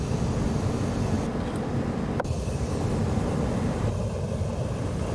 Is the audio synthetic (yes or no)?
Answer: no